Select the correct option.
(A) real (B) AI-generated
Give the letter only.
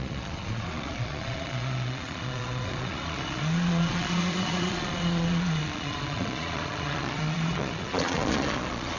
B